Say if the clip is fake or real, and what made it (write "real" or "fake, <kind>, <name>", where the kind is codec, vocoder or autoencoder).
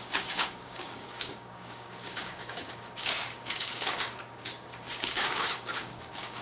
fake, codec, DAC